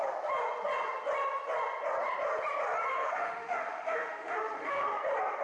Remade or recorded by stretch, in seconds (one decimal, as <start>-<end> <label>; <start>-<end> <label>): 0.0-2.9 recorded; 2.9-5.0 remade; 5.0-5.4 recorded